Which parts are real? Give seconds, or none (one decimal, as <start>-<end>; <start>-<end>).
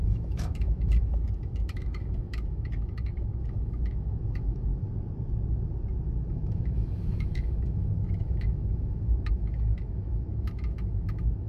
4.7-6.3